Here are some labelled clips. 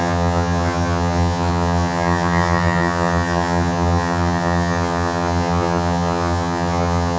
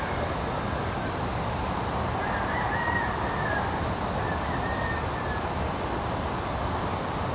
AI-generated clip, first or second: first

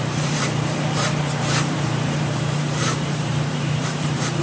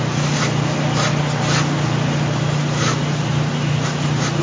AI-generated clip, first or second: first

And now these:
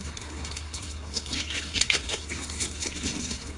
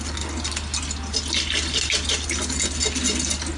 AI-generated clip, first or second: first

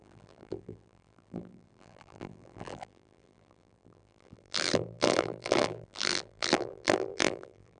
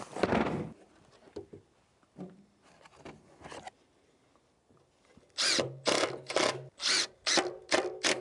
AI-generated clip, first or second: first